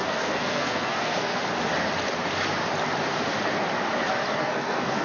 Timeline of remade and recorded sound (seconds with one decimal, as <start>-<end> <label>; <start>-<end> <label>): 0.0-1.4 remade; 1.4-4.4 recorded; 4.4-5.0 remade